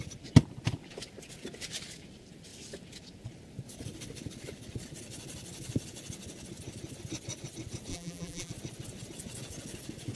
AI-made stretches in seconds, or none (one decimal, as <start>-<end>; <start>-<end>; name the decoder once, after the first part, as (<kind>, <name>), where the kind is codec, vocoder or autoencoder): 7.9-8.5 (vocoder, BigVGAN v2)

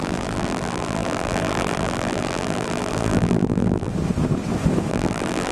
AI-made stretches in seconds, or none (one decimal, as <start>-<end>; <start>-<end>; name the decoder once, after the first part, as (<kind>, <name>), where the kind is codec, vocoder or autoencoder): 0.0-3.9 (vocoder, BigVGAN v2); 4.9-5.5

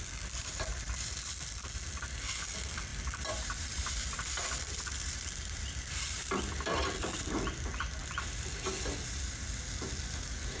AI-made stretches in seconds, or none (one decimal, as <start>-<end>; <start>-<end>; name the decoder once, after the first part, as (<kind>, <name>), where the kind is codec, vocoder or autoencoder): 0.7-1.3 (vocoder, BigVGAN v2); 2.9-7.4

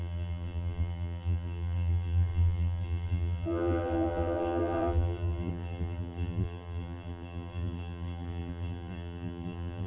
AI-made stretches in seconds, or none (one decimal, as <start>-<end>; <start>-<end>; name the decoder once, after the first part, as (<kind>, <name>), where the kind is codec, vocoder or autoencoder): 0.0-9.9 (vocoder, BigVGAN v2)